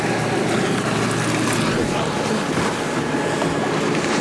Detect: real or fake real